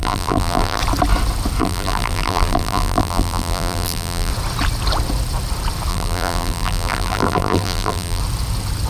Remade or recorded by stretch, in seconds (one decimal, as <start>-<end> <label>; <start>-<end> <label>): 0.0-0.8 remade; 0.8-1.6 recorded; 1.6-4.3 remade; 4.3-5.9 recorded; 5.9-8.2 remade; 8.2-8.9 recorded